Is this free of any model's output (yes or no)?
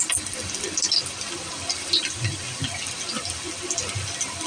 yes